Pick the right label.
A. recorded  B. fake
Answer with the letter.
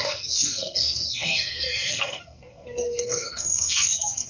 B